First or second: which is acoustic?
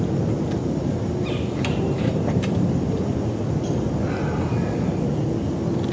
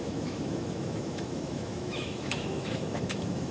first